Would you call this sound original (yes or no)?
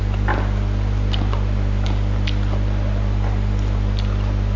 yes